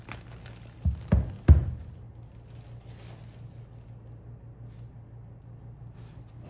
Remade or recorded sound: recorded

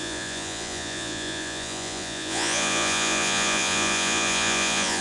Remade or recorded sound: remade